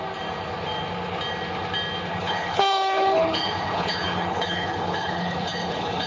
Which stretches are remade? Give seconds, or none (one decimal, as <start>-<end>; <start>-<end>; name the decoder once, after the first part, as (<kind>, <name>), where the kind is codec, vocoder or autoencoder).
2.1-6.1 (codec, HILCodec)